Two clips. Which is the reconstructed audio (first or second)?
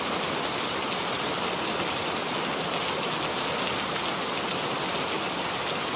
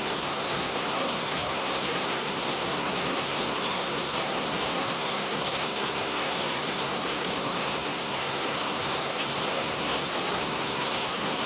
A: second